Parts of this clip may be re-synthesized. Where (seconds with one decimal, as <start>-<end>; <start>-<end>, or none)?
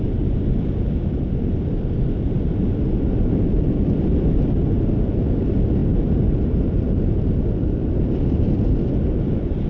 none